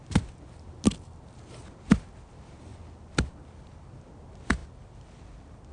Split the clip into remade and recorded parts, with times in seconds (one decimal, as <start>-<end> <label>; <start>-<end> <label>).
0.0-5.7 recorded